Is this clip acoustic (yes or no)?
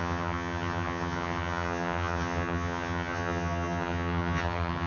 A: no